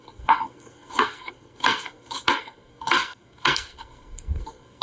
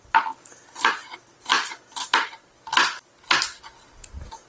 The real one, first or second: second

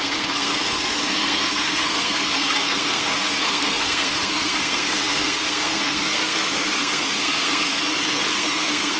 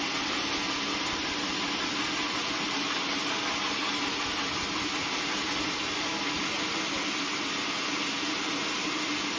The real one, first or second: second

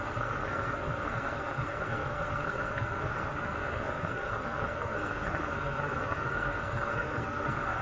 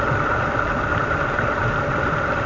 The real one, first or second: second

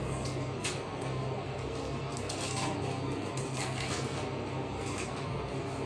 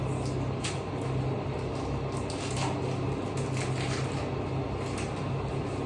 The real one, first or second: second